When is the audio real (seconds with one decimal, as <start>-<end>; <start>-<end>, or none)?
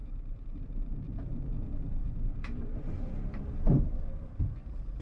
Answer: 0.6-2.0